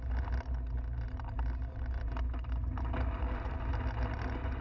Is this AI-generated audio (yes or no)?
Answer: no